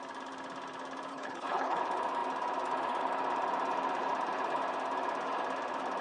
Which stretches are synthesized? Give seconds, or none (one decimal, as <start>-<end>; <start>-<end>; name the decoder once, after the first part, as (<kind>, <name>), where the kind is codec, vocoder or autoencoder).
1.1-1.8 (codec, HILCodec)

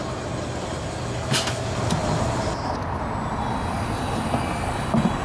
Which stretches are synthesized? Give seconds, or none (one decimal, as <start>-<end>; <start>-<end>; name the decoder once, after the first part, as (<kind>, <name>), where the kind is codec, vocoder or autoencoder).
none

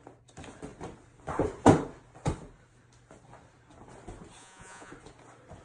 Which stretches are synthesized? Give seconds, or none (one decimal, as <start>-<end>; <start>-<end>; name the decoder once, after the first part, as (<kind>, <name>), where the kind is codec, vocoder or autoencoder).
4.4-4.9 (vocoder, Vocos)

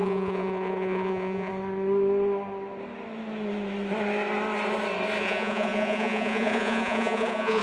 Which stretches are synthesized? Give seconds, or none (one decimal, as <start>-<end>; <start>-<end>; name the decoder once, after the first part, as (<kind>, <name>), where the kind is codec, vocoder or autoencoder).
0.0-1.5 (vocoder, Vocos); 5.2-7.6

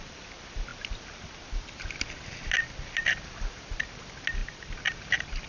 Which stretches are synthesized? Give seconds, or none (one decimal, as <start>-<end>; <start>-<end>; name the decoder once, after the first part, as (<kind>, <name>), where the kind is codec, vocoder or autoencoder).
none